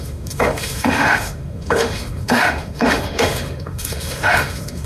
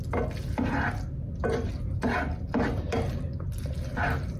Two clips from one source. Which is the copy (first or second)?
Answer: first